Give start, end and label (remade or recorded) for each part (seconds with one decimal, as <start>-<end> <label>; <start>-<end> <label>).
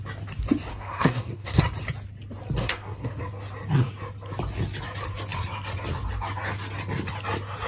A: 0.0-0.7 recorded; 0.7-1.6 remade; 1.6-2.6 recorded; 2.6-3.2 remade; 3.2-7.7 recorded